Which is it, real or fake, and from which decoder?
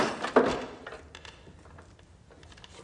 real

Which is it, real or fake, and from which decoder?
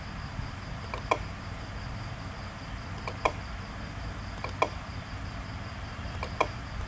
real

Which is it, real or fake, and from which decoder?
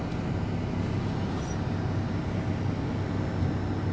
real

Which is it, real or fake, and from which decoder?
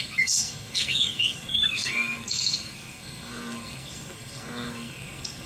fake, codec, SNAC